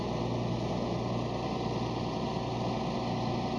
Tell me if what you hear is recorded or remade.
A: recorded